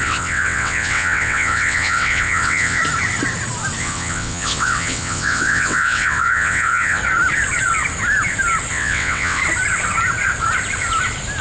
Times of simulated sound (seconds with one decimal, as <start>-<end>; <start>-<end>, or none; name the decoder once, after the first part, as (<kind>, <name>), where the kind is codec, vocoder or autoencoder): 0.0-2.8 (vocoder, WaveNeXt); 3.8-7.0; 8.7-9.4